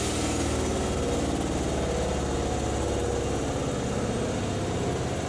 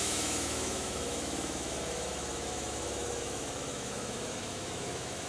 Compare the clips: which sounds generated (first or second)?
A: second